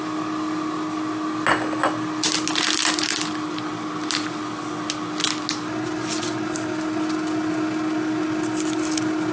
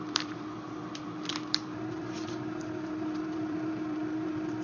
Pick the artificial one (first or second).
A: second